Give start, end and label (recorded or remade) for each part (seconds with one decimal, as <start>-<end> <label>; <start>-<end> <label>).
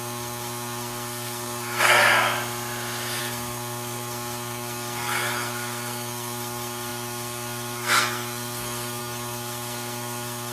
0.0-2.0 remade; 2.0-3.2 recorded; 3.2-10.5 remade